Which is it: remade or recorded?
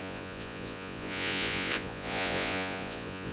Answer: remade